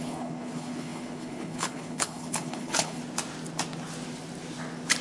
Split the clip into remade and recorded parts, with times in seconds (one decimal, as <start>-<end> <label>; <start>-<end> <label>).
0.0-3.0 remade; 3.0-5.0 recorded